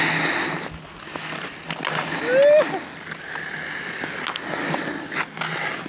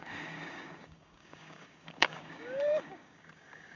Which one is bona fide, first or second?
first